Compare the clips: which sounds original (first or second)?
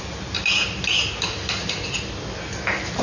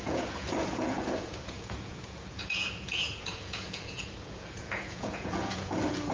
first